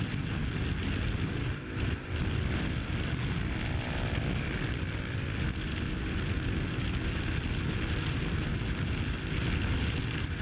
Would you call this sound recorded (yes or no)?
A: yes